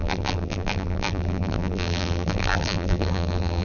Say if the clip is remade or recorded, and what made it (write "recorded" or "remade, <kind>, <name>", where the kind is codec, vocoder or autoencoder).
remade, vocoder, BigVGAN v2